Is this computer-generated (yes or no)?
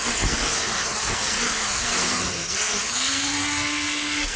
yes